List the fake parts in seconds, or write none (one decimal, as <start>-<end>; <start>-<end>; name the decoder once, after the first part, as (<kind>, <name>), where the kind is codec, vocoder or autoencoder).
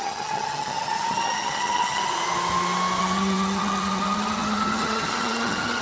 0.0-2.1 (vocoder, HiFi-GAN); 3.0-5.8